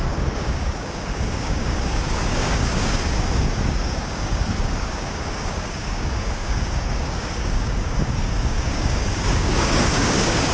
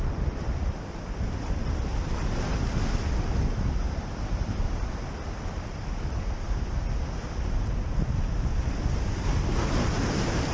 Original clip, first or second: second